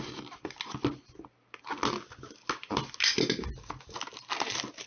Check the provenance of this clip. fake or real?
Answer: real